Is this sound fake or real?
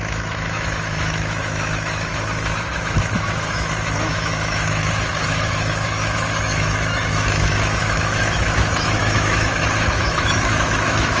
fake